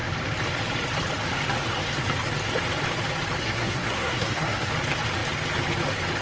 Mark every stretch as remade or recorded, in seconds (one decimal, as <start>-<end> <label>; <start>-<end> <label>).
0.0-3.4 recorded; 3.4-4.7 remade; 4.7-6.2 recorded